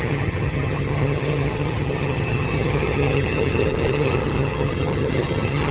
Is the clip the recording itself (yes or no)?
no